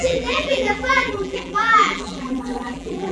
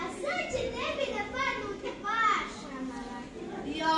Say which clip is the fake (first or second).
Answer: first